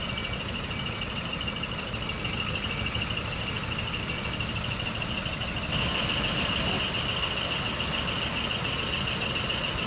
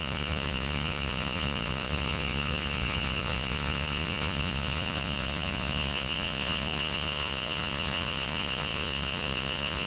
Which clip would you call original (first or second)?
first